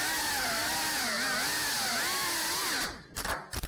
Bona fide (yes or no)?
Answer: yes